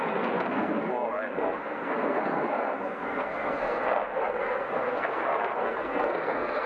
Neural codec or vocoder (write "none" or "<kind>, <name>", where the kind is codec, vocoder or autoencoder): codec, SNAC